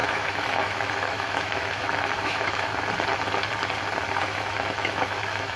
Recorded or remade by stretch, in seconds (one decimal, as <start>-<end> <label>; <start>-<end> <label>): 0.0-2.7 remade; 2.7-4.2 recorded; 4.2-5.6 remade